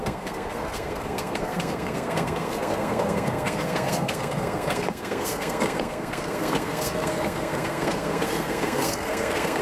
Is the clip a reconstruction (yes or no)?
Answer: yes